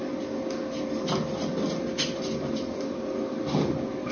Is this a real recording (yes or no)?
yes